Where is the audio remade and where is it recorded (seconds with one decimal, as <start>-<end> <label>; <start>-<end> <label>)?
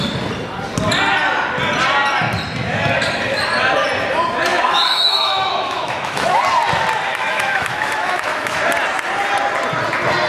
0.0-4.5 recorded; 4.5-6.4 remade; 6.4-7.1 recorded; 7.1-8.6 remade; 8.6-10.3 recorded